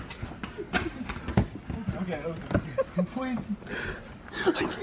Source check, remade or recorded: recorded